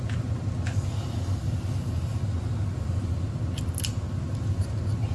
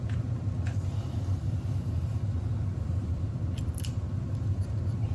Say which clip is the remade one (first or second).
second